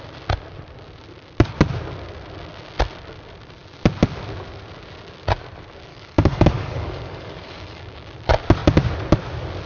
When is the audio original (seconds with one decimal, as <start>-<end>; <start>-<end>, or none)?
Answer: 0.0-5.9; 8.1-9.7